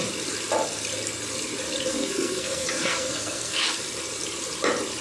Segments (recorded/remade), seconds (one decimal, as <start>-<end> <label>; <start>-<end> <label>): 0.0-1.9 recorded; 1.9-3.8 remade; 3.8-5.0 recorded